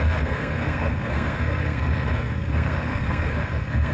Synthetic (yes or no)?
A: yes